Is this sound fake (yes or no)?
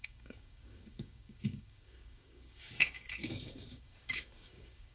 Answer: yes